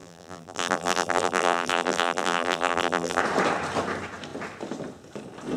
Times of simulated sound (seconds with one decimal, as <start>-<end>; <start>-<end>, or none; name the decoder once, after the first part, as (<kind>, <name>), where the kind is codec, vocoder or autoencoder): 0.0-3.2 (vocoder, BigVGAN v2)